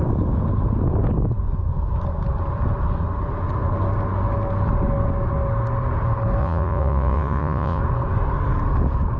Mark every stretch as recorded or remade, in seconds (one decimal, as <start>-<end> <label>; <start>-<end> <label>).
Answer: 0.0-6.4 recorded; 6.4-7.8 remade; 7.8-9.2 recorded